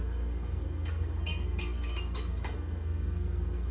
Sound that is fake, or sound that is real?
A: fake